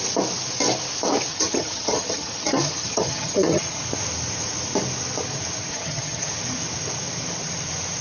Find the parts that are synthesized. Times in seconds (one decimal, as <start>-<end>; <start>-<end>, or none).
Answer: 1.3-3.8; 5.7-6.3